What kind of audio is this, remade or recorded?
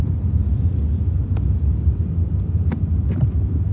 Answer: recorded